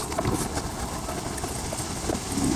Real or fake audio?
real